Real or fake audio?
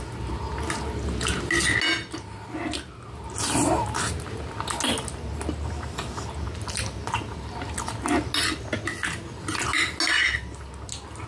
real